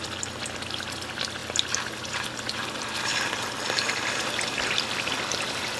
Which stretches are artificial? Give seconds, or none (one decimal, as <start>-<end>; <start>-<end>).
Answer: none